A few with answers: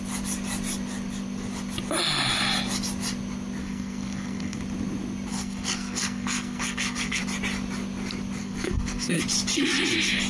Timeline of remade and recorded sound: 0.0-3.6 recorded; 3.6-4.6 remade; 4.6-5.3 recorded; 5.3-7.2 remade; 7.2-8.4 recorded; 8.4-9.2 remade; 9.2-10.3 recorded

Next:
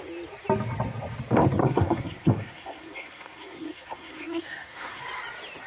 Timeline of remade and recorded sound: 0.0-1.6 recorded; 1.6-5.0 remade; 5.0-5.7 recorded

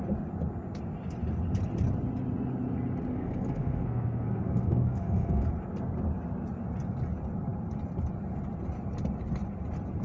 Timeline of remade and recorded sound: 0.0-3.1 recorded; 3.1-5.5 remade; 5.5-10.0 recorded

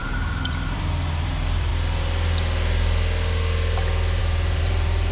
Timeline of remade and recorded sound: 0.0-1.7 remade; 1.7-4.2 recorded; 4.2-5.1 remade

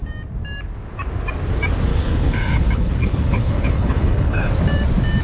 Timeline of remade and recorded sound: 0.0-1.9 recorded; 1.9-4.5 remade; 4.5-5.2 recorded

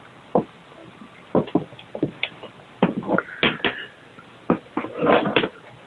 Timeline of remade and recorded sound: 0.0-5.9 recorded